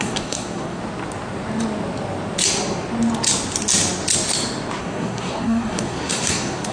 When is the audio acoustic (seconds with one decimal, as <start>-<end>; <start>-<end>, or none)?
0.8-4.8